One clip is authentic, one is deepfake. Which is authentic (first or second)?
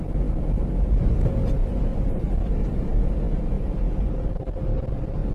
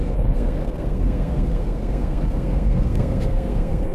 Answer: first